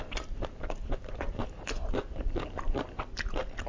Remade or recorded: recorded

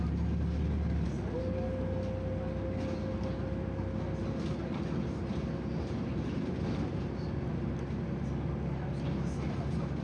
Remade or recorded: recorded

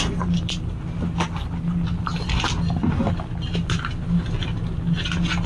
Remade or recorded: recorded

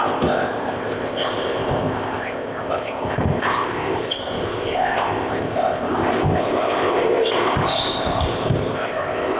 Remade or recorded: remade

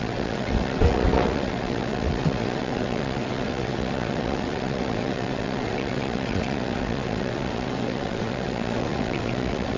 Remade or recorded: remade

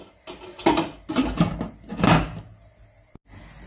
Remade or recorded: recorded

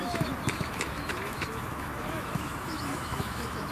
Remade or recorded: remade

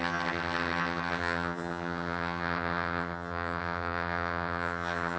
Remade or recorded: remade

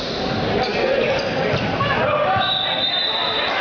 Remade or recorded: recorded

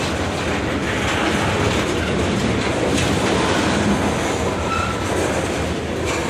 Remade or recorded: recorded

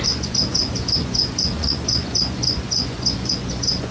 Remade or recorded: remade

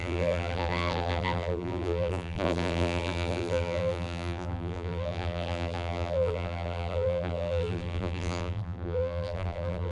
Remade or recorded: remade